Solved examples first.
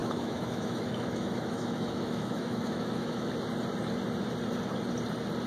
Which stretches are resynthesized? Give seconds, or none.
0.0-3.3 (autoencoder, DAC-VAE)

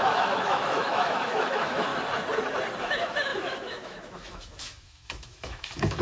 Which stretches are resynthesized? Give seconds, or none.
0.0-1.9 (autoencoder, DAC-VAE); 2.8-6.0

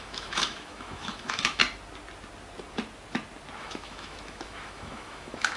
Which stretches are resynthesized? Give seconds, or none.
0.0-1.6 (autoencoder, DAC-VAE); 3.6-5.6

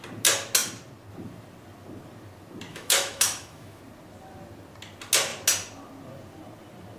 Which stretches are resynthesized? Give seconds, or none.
2.7-3.8 (autoencoder, DAC-VAE)

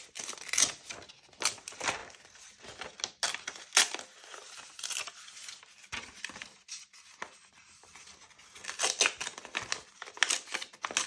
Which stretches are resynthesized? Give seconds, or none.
none